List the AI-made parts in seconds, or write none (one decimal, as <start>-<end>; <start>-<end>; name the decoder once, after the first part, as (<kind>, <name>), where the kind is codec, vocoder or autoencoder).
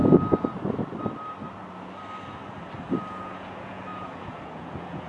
3.1-5.1 (vocoder, Vocos)